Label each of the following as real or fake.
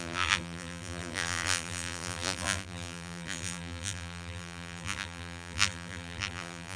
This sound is fake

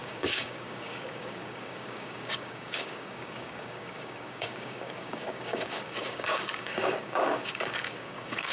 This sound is fake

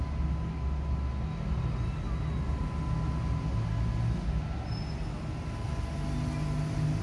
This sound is real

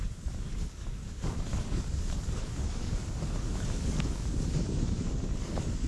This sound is fake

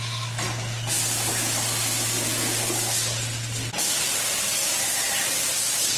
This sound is real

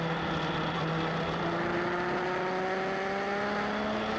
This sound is real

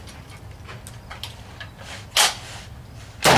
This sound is real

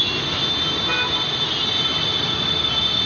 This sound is real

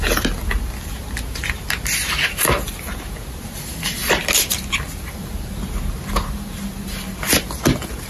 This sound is real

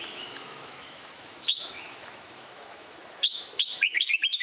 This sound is fake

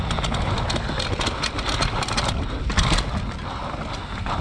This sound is real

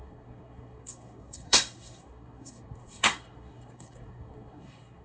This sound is fake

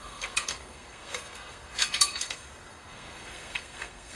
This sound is fake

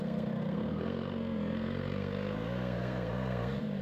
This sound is fake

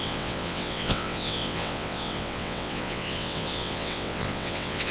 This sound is fake